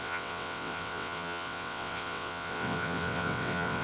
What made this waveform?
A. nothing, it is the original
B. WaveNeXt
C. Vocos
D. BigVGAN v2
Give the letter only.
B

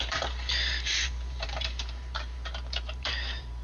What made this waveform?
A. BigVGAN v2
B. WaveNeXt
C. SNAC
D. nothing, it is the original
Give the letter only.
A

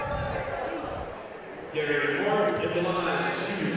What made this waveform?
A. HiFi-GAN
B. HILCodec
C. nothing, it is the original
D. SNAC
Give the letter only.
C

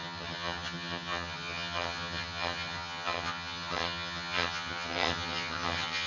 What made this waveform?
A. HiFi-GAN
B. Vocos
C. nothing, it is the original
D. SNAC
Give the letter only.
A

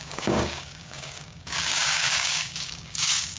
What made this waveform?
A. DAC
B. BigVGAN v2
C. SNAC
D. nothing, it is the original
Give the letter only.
A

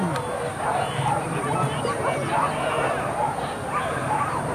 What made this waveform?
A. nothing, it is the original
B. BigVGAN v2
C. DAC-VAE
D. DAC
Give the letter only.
A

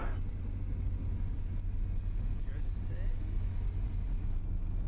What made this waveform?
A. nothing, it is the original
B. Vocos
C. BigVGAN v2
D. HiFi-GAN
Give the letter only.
A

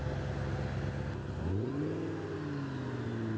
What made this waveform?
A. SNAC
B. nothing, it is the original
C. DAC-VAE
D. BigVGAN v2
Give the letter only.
B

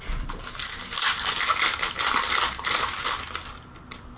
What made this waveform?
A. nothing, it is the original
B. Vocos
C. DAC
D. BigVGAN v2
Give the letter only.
A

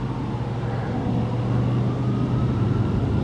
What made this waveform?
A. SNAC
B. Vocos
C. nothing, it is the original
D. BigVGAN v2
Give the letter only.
C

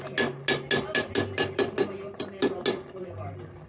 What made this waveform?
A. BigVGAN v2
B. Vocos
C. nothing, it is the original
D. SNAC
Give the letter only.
C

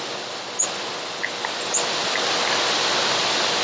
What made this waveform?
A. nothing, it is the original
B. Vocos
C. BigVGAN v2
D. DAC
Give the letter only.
A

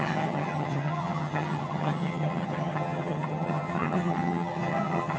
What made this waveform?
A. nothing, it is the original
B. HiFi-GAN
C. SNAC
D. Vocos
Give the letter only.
B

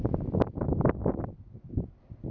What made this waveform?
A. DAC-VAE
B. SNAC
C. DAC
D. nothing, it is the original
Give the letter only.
D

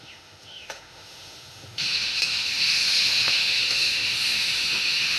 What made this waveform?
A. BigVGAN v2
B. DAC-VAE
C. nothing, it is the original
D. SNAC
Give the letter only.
B